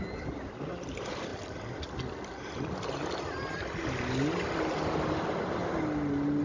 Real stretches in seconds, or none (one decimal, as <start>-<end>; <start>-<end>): 0.0-6.4